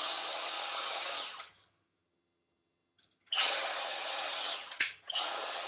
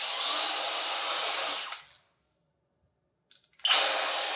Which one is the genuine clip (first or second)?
second